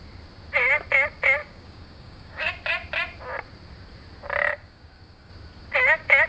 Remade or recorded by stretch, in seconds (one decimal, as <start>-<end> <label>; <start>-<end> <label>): 0.0-1.4 recorded; 1.4-2.5 remade; 2.5-4.5 recorded; 4.5-5.3 remade; 5.3-6.3 recorded